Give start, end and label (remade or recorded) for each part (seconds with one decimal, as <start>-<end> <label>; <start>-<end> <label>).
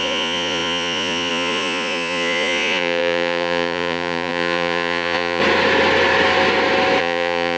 0.0-5.4 remade; 5.4-7.0 recorded; 7.0-7.6 remade